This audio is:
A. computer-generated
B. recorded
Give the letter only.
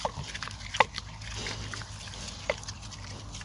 B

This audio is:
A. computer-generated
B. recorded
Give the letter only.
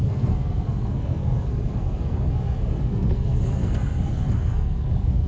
A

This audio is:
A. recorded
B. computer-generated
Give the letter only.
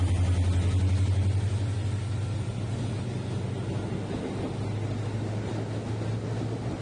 A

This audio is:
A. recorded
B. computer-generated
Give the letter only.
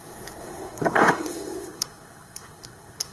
B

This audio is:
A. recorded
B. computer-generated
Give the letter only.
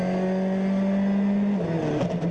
A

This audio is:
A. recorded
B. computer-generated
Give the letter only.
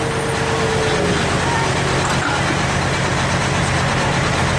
A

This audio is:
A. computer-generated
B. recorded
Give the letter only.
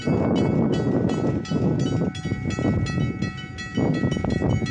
B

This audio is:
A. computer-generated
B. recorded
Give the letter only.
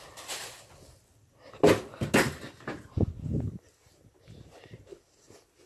B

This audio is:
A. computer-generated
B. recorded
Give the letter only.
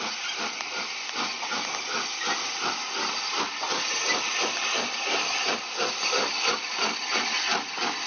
B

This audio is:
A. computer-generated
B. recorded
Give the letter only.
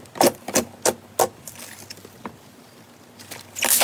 B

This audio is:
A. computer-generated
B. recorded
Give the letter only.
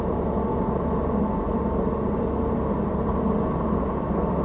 B